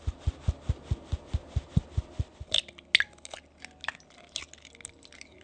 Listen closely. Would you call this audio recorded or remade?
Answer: recorded